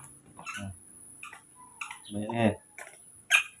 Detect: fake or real real